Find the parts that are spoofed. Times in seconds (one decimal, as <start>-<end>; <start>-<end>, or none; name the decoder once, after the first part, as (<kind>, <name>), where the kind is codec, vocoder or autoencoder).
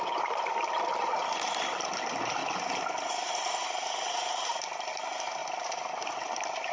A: none